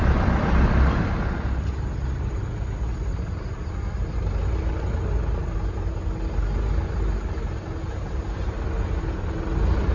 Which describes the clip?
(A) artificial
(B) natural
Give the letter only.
B